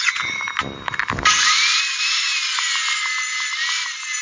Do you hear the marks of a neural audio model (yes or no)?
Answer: no